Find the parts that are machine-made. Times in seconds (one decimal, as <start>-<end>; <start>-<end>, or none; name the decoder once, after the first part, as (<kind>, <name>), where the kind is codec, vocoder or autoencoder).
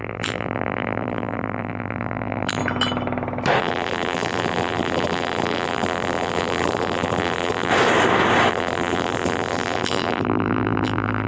0.0-2.6 (vocoder, BigVGAN v2); 3.6-7.7; 8.5-11.3